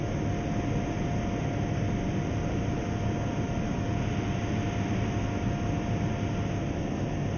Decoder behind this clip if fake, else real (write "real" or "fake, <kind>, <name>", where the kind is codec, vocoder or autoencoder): real